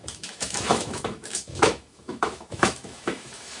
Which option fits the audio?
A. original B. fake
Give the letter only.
B